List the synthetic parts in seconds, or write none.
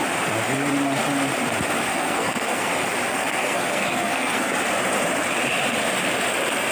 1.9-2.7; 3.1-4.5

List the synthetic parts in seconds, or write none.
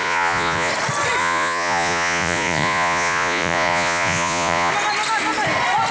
0.0-0.7; 1.2-4.7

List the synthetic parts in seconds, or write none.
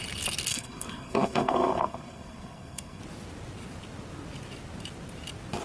0.5-3.0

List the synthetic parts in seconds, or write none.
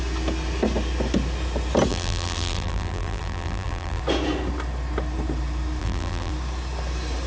1.9-4.0; 5.8-6.3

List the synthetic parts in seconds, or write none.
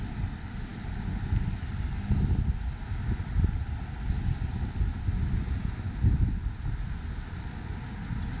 none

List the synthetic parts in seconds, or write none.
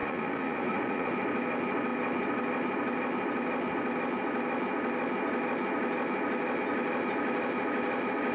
0.0-1.1